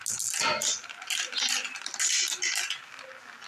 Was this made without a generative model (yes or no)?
yes